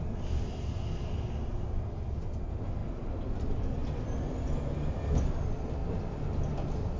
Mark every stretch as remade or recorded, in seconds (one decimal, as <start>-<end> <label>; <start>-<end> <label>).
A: 0.0-7.0 recorded